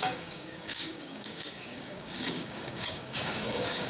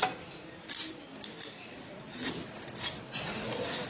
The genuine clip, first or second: second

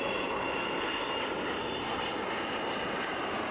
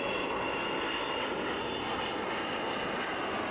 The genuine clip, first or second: second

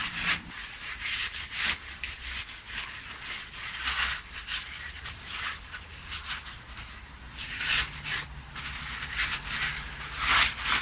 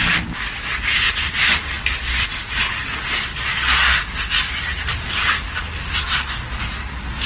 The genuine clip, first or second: second